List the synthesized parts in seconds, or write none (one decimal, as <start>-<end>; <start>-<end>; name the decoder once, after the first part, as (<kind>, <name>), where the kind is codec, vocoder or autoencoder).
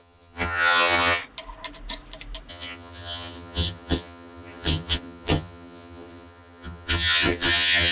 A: 0.0-1.2 (vocoder, HiFi-GAN); 2.5-7.9